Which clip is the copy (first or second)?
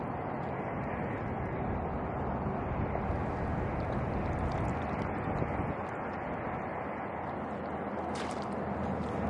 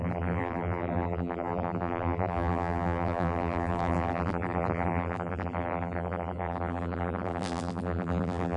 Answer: second